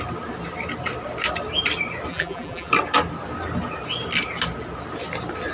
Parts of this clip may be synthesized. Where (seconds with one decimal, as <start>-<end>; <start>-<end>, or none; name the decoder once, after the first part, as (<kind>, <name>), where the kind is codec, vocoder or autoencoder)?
2.1-2.7 (vocoder, BigVGAN v2)